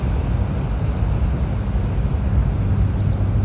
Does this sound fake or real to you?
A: real